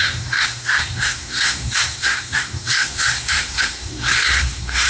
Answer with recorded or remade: remade